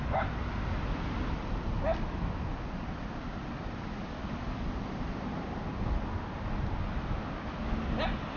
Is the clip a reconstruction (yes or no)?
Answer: no